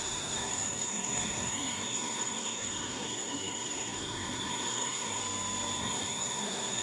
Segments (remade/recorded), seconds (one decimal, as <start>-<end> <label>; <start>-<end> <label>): 0.0-5.2 remade; 5.2-5.8 recorded; 5.8-6.8 remade